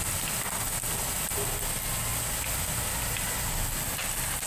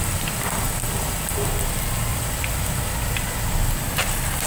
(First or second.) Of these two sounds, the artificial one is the second